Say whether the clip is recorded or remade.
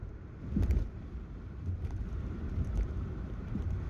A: remade